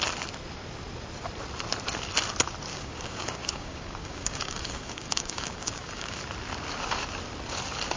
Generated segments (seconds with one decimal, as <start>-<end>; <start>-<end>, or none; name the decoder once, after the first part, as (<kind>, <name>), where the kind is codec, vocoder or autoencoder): 2.7-6.2 (codec, DAC)